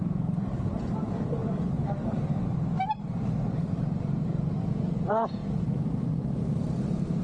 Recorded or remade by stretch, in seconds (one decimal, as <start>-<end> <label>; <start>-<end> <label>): 0.0-7.2 remade